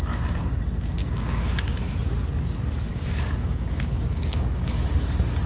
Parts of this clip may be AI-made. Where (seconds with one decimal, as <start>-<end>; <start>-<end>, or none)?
1.0-1.5; 2.9-5.0